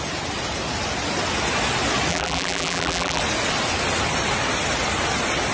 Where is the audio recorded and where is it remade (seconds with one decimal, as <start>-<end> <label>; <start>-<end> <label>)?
0.0-2.1 recorded; 2.1-3.2 remade; 3.2-5.5 recorded